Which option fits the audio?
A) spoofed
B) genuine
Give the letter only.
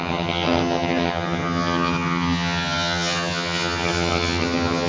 A